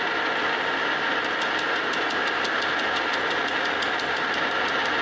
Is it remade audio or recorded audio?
recorded